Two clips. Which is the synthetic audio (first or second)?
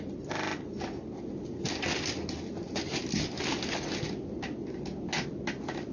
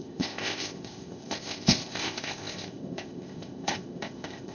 second